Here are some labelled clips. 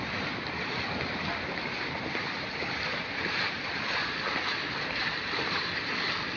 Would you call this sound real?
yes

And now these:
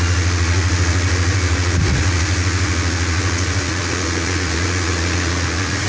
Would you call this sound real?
no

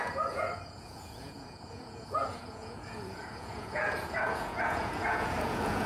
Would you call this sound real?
no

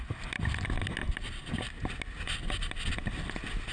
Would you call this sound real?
yes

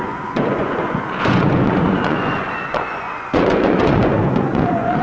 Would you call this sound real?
no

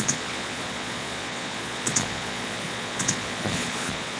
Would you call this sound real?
no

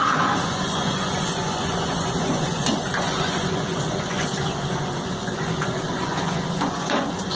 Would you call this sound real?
no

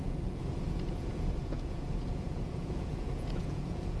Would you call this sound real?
no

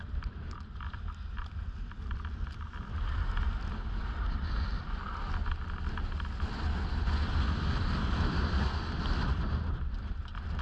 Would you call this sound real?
yes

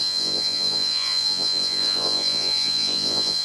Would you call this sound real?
no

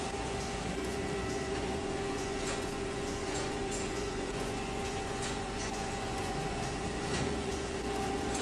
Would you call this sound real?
no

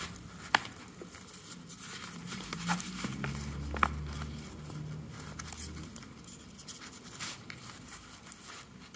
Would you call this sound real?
yes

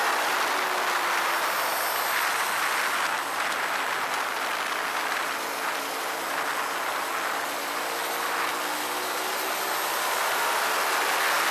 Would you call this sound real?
yes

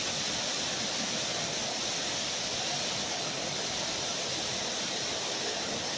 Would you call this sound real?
yes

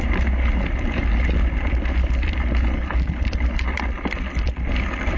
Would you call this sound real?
yes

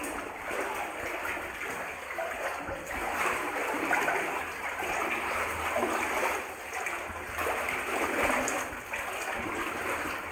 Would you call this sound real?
yes